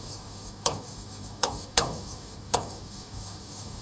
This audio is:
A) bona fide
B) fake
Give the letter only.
B